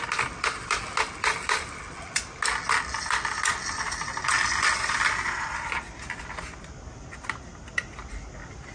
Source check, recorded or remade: recorded